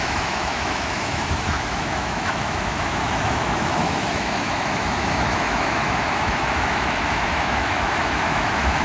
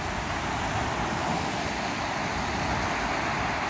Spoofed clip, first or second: first